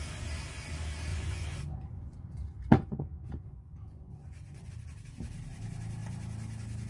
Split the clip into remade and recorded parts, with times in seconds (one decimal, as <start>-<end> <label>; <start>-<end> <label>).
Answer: 0.0-1.1 recorded; 1.1-4.7 remade; 4.7-6.9 recorded